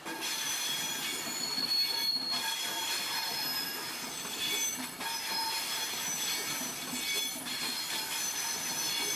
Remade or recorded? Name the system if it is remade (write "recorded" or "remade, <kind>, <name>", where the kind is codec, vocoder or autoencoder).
recorded